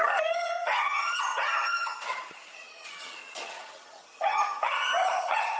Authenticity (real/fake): fake